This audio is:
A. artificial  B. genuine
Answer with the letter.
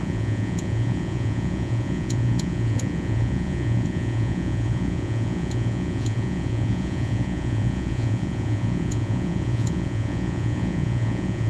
A